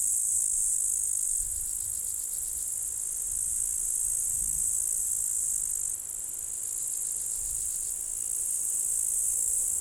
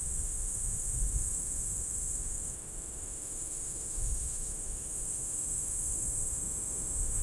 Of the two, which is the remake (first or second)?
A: second